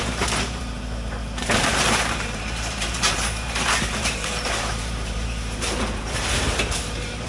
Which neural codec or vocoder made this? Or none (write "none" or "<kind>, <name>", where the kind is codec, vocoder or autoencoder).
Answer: vocoder, BigVGAN v2